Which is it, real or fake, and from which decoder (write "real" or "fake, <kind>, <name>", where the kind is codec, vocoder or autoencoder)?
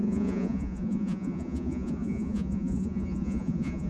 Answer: fake, vocoder, Vocos